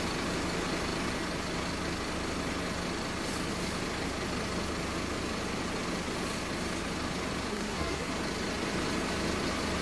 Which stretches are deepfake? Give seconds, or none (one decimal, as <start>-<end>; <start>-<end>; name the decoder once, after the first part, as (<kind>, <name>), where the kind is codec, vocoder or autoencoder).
7.5-8.1 (codec, SNAC)